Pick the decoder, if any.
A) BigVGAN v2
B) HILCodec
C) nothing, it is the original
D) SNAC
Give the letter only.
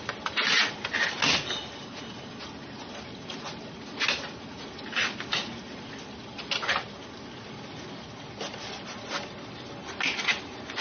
C